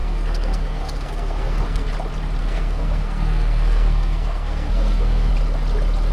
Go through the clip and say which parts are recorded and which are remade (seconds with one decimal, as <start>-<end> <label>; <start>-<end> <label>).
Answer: 0.0-1.9 remade; 1.9-2.4 recorded; 2.4-5.3 remade; 5.3-6.1 recorded